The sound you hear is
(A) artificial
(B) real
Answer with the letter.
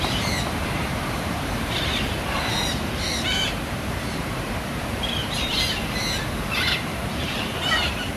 A